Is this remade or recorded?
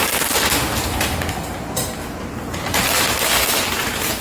recorded